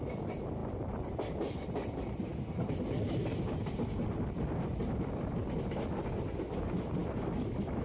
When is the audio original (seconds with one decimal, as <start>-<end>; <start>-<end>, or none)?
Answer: 0.0-7.8